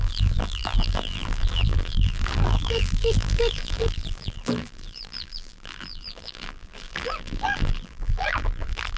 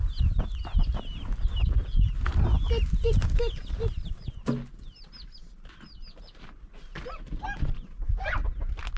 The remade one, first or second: first